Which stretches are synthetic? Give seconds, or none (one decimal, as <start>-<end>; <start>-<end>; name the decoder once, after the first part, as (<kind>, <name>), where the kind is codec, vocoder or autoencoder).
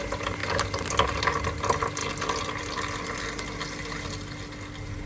none